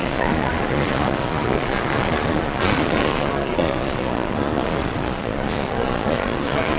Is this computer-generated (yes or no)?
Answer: yes